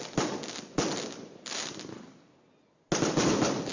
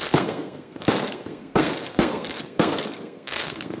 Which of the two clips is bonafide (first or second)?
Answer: first